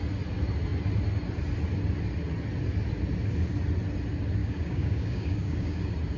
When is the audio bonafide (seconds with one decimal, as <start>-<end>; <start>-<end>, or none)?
0.0-4.4; 5.8-6.2